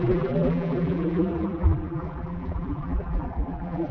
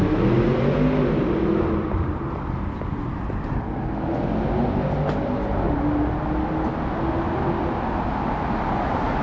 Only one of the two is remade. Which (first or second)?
first